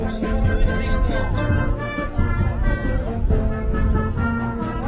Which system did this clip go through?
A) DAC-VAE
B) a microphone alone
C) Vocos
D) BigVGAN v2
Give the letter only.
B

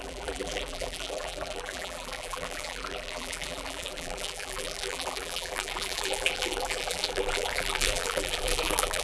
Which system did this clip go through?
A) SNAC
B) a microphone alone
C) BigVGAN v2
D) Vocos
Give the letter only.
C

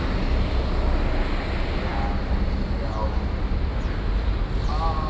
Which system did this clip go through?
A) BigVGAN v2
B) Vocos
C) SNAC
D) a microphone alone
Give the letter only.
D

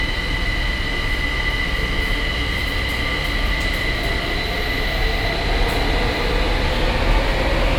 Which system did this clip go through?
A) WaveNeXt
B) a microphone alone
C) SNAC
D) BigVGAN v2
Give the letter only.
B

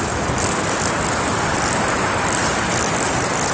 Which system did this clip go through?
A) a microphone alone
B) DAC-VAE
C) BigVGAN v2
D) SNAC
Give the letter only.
C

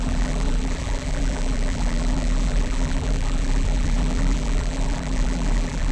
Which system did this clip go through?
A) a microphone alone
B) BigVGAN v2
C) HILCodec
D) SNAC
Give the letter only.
B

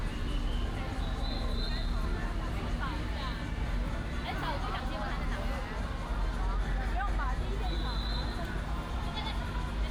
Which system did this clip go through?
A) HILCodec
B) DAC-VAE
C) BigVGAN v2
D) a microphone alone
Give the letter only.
D